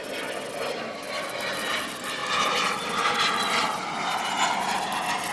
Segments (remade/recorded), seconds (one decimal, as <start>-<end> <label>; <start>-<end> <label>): 0.0-5.3 recorded